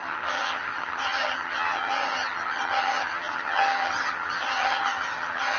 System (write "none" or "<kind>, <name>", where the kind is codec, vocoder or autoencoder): vocoder, HiFi-GAN